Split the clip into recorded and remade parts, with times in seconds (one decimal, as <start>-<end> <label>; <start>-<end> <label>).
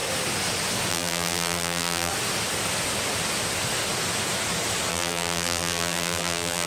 0.0-0.9 recorded; 0.9-2.1 remade; 2.1-4.9 recorded; 4.9-6.7 remade